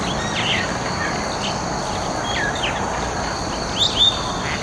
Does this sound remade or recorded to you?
recorded